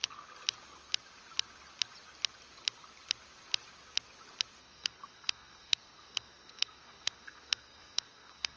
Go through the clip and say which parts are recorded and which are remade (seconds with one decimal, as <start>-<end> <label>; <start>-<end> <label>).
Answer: 0.0-4.6 recorded; 4.6-8.6 remade